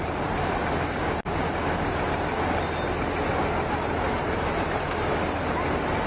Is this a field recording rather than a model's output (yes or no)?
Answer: yes